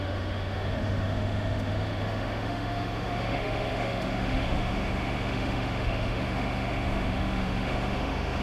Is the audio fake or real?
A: fake